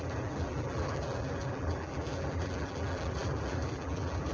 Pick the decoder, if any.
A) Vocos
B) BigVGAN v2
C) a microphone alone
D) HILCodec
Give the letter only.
B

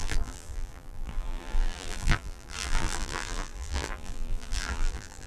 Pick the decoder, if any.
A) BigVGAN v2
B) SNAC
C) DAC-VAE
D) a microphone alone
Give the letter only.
A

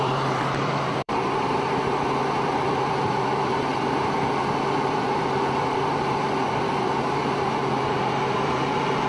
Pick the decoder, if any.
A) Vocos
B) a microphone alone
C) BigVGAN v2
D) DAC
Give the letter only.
C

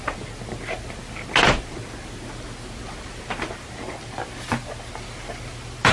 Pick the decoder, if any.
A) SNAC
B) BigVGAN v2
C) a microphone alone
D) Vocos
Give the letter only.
C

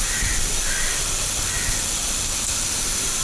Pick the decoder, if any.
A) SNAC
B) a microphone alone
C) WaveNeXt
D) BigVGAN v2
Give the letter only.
D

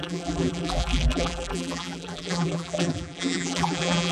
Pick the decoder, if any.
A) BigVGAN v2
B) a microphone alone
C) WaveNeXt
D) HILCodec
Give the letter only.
A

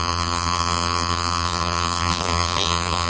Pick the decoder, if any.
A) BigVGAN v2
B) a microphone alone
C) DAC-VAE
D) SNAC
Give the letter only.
A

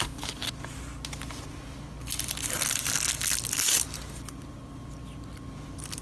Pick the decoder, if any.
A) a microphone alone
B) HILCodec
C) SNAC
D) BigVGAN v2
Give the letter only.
A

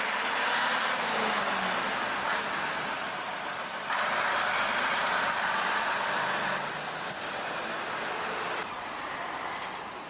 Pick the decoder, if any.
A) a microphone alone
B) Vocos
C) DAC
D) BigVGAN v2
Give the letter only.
A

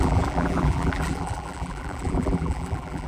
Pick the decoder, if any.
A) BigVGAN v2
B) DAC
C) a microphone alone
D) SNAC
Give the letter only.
A